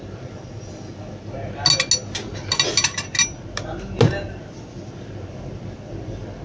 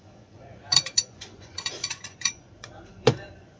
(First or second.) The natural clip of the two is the first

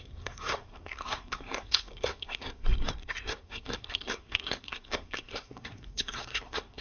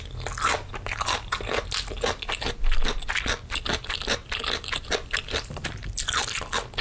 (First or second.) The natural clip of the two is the second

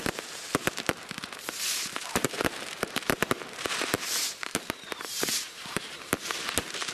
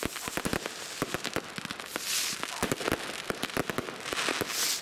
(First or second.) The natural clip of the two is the second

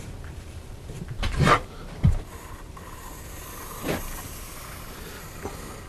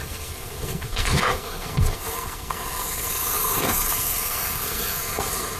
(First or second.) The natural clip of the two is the first